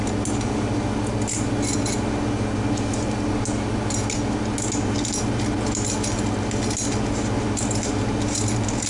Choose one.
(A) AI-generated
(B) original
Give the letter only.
B